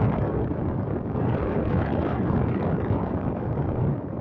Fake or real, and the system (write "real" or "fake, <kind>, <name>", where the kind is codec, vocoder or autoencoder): fake, codec, DAC